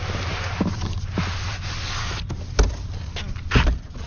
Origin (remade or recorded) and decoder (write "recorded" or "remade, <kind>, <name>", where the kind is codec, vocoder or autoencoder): recorded